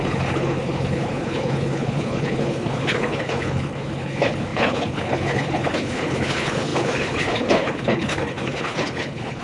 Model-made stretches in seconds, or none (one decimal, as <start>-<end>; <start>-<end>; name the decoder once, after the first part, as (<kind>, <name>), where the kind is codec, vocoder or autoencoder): 0.0-9.4 (codec, HILCodec)